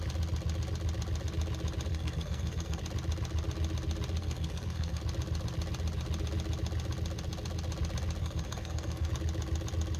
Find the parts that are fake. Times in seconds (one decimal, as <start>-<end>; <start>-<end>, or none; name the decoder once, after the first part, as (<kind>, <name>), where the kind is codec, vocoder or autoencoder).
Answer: 1.9-2.8 (codec, SNAC); 4.2-5.0; 8.2-9.1